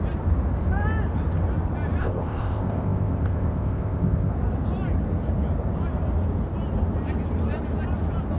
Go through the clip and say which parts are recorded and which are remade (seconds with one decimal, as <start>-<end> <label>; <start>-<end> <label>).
0.0-2.0 recorded; 2.0-4.3 remade; 4.3-8.4 recorded